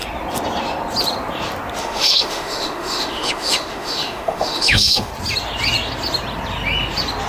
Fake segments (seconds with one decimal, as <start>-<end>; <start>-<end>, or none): 1.8-5.1